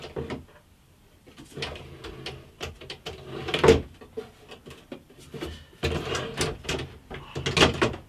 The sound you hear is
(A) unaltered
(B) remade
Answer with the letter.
A